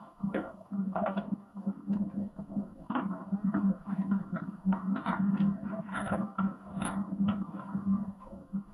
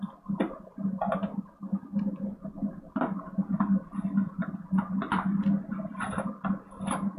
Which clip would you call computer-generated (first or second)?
first